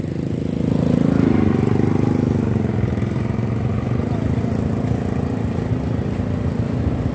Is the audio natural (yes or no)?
yes